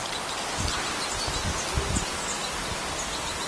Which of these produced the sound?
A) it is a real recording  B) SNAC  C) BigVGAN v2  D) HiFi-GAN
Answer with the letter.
A